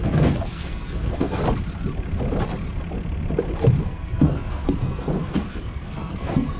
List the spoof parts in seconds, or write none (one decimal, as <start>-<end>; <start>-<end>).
0.0-1.4; 3.8-6.6